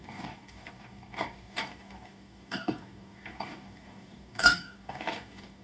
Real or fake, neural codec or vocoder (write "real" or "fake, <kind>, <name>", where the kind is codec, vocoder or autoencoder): fake, codec, DAC